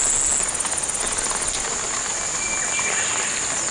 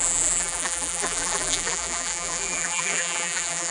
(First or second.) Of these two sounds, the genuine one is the first